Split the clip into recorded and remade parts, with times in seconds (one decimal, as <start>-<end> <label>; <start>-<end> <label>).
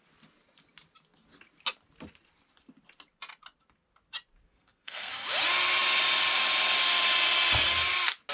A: 0.0-4.5 recorded; 4.5-5.1 remade; 5.1-8.3 recorded